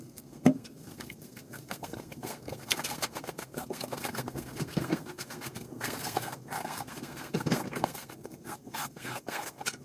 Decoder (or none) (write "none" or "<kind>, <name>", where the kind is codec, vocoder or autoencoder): codec, SNAC